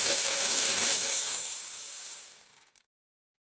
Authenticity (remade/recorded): remade